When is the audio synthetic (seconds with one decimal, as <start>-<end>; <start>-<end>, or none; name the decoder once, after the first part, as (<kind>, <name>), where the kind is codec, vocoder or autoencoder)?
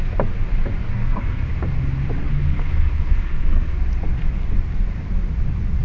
0.8-1.5 (codec, SNAC); 2.2-3.8